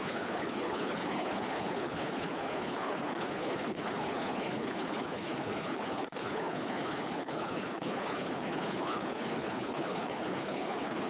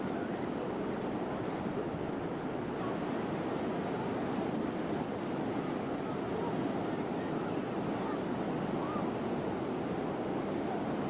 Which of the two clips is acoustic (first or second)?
second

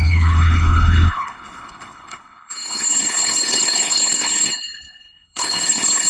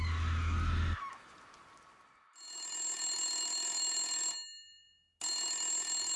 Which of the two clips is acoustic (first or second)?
second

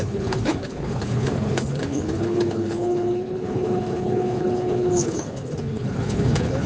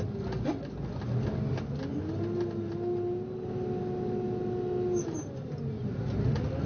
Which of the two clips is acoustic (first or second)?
second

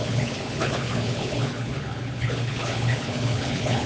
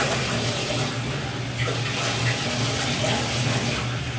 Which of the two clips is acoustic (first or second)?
second